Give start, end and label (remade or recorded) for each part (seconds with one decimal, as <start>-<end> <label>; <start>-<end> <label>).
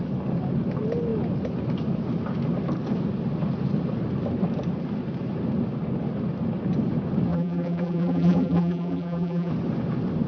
0.0-7.3 recorded; 7.3-9.5 remade; 9.5-10.3 recorded